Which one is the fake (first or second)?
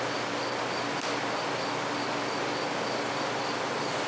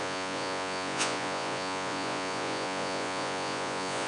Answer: second